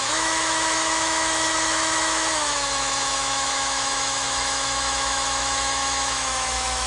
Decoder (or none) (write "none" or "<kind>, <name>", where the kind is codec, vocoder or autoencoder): autoencoder, DAC-VAE